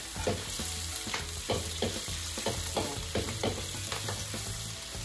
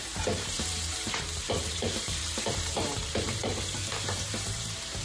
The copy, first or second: second